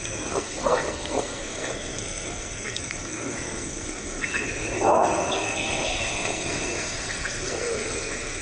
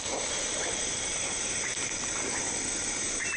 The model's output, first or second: first